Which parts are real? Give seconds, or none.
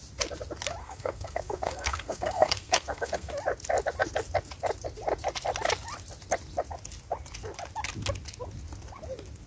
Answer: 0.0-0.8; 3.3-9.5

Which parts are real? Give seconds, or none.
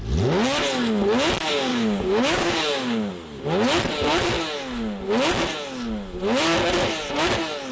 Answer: 0.0-1.7; 3.1-7.7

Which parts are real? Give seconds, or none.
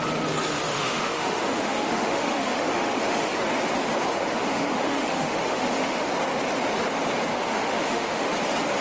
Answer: 0.0-0.7; 3.3-4.1; 6.1-7.3; 8.3-8.8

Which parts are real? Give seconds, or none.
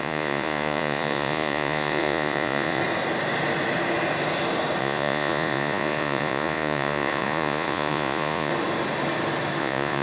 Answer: 2.8-4.8; 8.5-9.6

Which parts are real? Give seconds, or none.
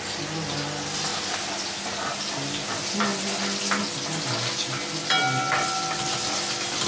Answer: 0.0-6.9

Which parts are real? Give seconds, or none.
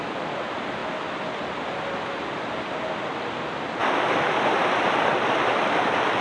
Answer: 0.0-6.2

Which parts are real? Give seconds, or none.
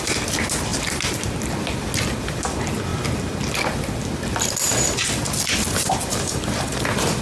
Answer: 0.0-7.2